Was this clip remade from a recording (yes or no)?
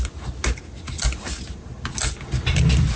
no